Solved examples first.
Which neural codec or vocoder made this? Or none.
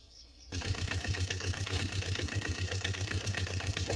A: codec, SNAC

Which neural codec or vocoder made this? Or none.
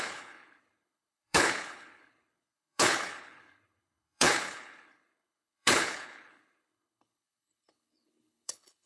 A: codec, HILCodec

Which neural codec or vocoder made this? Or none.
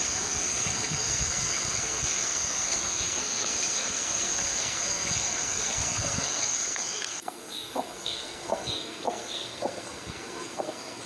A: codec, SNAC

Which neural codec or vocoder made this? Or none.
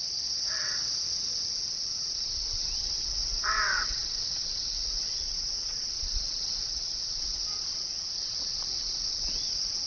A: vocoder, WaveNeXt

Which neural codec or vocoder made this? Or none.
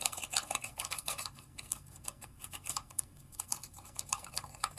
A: codec, SNAC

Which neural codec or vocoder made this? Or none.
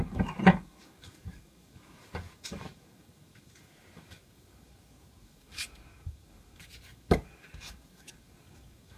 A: codec, DAC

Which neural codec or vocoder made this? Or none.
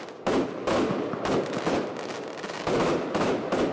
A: none